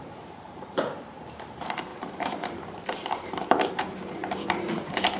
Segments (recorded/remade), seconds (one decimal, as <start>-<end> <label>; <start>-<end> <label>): 0.0-5.2 remade